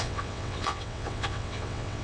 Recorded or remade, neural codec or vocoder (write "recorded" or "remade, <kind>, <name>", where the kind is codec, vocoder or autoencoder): remade, vocoder, WaveNeXt